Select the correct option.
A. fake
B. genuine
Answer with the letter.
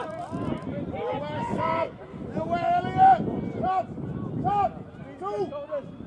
B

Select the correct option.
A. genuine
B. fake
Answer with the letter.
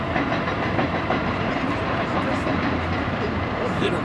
B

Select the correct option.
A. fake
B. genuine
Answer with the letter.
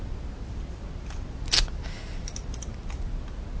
B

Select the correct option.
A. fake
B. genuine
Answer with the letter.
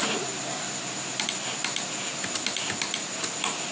B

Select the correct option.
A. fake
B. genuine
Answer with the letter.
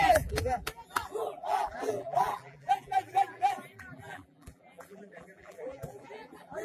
A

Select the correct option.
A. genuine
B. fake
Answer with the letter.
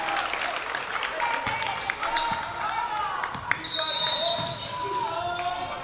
A